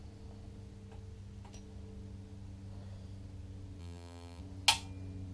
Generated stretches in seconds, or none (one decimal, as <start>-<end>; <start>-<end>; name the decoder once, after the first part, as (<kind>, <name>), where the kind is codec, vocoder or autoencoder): 3.8-4.4 (vocoder, BigVGAN v2)